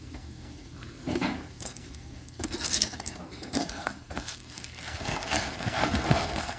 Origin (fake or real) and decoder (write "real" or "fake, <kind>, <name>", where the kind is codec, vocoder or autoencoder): fake, codec, SNAC